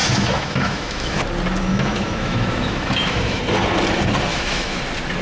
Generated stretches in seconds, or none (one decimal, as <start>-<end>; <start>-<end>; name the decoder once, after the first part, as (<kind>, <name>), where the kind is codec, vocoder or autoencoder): 0.0-1.2 (autoencoder, DAC-VAE); 1.7-3.4; 4.3-4.8